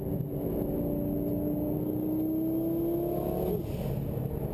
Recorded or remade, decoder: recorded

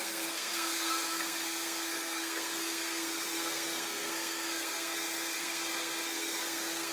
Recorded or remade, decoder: remade, codec, SNAC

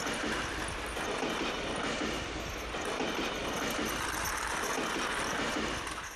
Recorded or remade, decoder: recorded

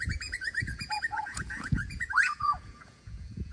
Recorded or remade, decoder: remade, vocoder, Vocos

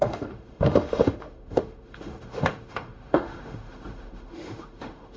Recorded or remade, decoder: remade, autoencoder, DAC-VAE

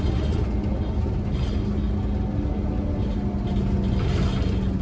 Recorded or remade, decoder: recorded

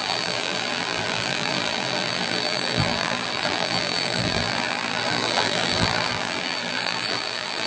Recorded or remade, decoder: remade, vocoder, BigVGAN v2